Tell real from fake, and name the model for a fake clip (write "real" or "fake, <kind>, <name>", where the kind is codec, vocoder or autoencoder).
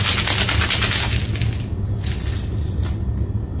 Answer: real